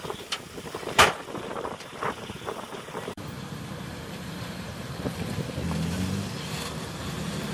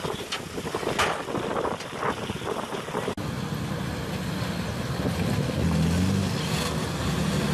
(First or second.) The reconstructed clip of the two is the first